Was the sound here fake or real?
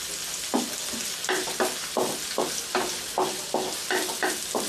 real